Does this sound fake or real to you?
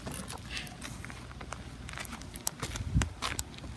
real